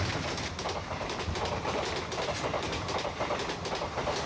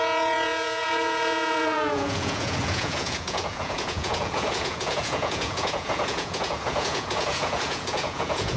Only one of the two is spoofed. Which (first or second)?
second